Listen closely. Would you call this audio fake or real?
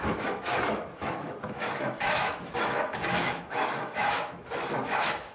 fake